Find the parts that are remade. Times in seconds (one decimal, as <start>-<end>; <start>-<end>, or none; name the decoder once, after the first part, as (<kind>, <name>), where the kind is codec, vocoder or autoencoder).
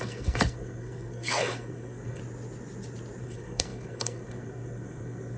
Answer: 0.0-2.2 (codec, SNAC); 3.2-5.4